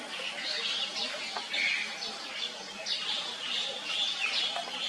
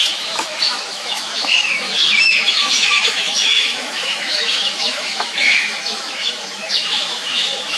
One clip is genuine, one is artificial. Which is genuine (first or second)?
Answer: first